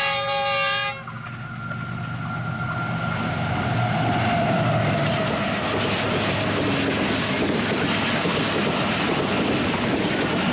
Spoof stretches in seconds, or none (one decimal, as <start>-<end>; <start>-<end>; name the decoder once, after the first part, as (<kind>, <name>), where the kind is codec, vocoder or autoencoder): none